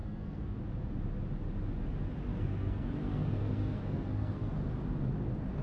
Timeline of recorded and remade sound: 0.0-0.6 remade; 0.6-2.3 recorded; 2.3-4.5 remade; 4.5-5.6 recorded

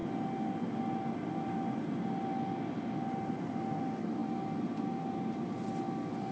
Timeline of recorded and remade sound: 0.0-6.3 recorded

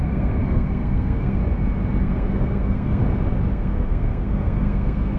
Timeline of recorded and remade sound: 0.0-1.4 remade; 1.4-2.0 recorded; 2.0-3.0 remade; 3.0-3.5 recorded; 3.5-5.2 remade

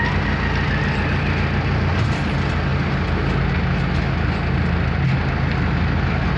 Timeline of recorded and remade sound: 0.0-6.4 recorded

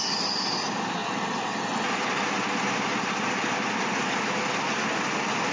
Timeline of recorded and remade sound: 0.0-5.5 recorded

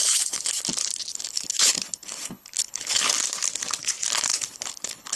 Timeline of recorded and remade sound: 0.0-0.6 remade; 0.6-1.1 recorded; 1.1-3.1 remade; 3.1-4.3 recorded; 4.3-5.2 remade

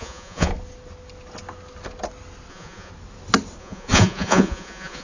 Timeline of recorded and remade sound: 0.0-0.5 remade; 0.5-2.5 recorded; 2.5-2.9 remade; 2.9-3.6 recorded; 3.6-5.0 remade

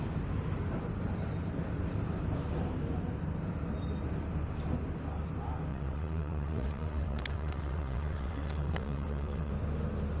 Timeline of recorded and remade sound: 0.0-5.7 recorded; 5.7-9.5 remade; 9.5-10.2 recorded